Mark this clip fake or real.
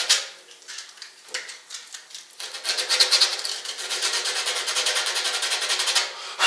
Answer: real